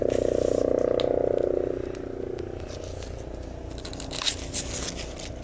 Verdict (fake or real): real